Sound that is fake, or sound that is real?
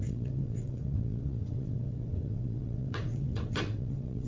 fake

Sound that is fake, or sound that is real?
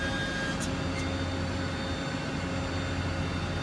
real